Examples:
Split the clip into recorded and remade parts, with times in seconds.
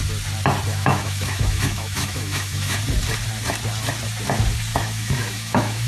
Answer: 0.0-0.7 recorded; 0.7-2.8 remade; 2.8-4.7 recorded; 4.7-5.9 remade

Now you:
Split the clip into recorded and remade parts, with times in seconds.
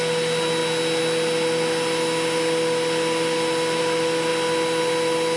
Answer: 0.0-5.4 recorded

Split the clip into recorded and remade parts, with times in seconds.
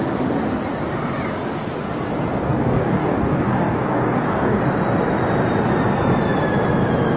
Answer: 0.0-2.4 recorded; 2.4-4.6 remade; 4.6-7.2 recorded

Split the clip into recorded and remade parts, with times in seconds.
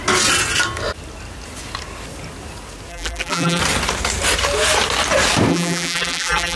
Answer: 0.0-2.9 recorded; 2.9-3.6 remade; 3.6-5.5 recorded; 5.5-6.6 remade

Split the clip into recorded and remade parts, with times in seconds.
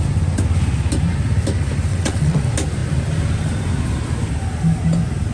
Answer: 0.0-1.9 recorded; 1.9-2.4 remade; 2.4-5.3 recorded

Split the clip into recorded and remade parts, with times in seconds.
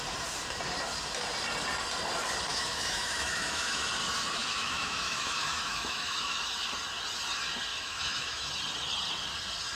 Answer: 0.0-2.5 recorded; 2.5-3.9 remade; 3.9-4.4 recorded; 4.4-6.5 remade; 6.5-7.7 recorded; 7.7-8.5 remade; 8.5-9.8 recorded